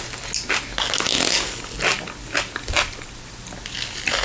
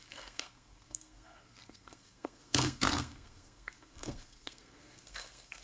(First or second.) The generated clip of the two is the second